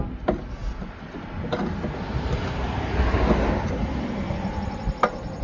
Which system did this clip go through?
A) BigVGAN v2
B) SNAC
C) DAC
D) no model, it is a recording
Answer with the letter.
D